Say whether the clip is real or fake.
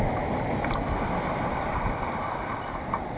real